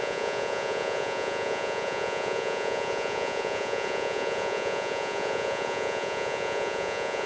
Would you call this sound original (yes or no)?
no